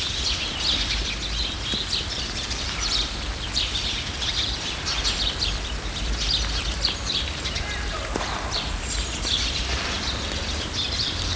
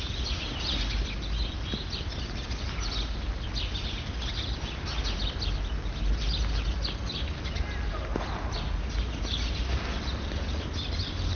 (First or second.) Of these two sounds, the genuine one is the second